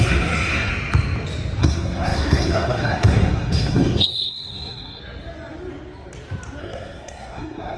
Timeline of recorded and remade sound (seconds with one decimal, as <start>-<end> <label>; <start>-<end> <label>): 0.0-0.7 remade; 0.7-1.6 recorded; 1.6-5.0 remade; 5.0-6.6 recorded; 6.6-7.8 remade